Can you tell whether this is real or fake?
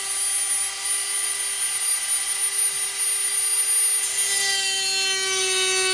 real